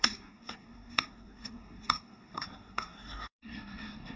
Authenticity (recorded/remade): remade